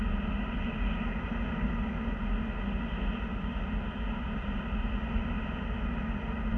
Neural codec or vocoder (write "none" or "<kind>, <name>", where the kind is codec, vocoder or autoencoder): none